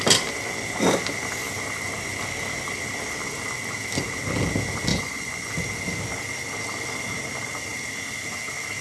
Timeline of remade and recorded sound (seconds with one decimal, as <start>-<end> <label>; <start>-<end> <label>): 0.0-4.9 recorded; 4.9-5.5 remade; 5.5-8.8 recorded